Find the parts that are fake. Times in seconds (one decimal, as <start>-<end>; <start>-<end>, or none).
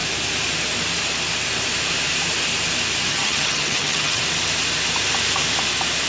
3.1-4.2